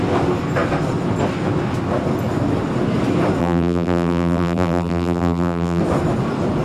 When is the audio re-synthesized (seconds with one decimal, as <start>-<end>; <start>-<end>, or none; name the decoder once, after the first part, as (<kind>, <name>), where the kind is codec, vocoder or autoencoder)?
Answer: 3.4-5.8 (vocoder, BigVGAN v2)